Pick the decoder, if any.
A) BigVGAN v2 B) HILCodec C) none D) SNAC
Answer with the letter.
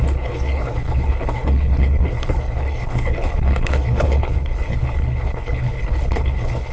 B